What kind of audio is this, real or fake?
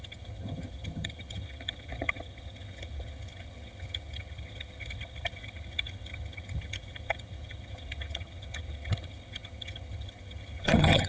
fake